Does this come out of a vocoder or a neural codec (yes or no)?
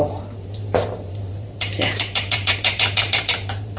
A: yes